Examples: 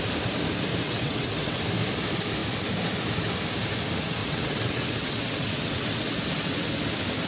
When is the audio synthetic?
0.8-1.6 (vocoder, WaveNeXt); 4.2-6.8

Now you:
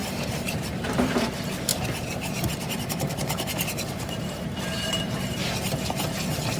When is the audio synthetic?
0.0-1.2 (vocoder, BigVGAN v2); 1.7-5.5

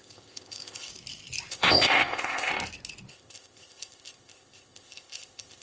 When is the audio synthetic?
0.0-0.9 (codec, ZipCodec); 1.5-2.5; 3.1-5.6

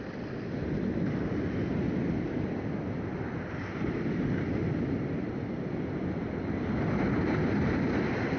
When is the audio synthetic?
none

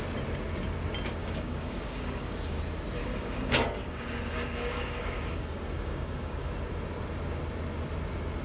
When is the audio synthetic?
1.2-2.6 (codec, DAC); 3.0-6.5

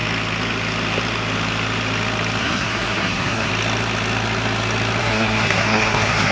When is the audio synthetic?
2.4-3.5 (codec, SNAC); 5.0-6.3